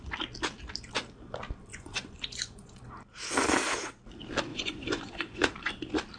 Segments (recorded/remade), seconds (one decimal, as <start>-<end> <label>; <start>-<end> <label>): 0.0-1.7 recorded; 1.7-2.8 remade; 2.8-4.5 recorded; 4.5-5.7 remade; 5.7-6.2 recorded

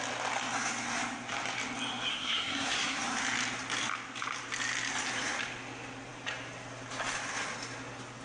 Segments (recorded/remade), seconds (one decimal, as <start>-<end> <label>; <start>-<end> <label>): 0.0-2.1 recorded; 2.1-3.0 remade; 3.0-8.2 recorded